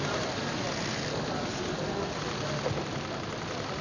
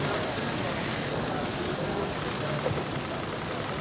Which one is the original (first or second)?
first